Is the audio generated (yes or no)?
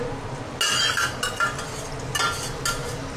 no